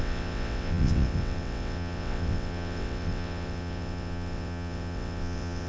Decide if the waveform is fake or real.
fake